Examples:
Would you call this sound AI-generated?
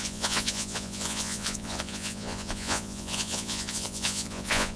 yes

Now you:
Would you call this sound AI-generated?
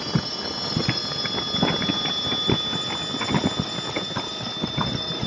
no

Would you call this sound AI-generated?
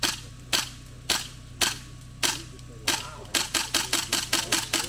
no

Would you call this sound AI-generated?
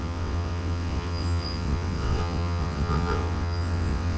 yes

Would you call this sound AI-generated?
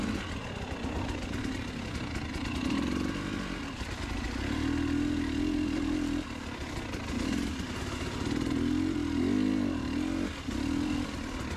no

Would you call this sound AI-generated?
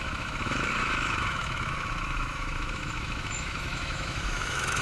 yes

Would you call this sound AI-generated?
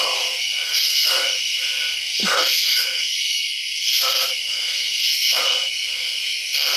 yes